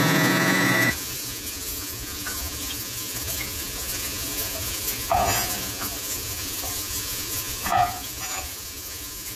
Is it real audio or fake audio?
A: fake